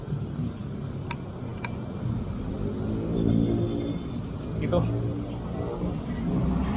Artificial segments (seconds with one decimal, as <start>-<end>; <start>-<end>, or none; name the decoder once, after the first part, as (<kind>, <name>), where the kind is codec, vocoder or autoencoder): none